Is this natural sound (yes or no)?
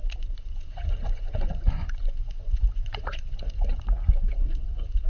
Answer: no